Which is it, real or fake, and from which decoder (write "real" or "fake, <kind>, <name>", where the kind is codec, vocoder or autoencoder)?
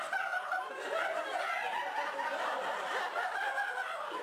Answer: fake, vocoder, BigVGAN v2